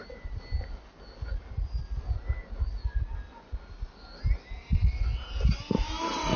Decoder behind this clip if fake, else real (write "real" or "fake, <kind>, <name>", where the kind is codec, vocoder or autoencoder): real